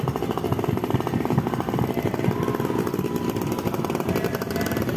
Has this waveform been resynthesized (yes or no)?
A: no